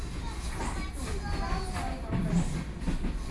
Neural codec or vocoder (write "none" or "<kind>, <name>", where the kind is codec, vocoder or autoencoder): none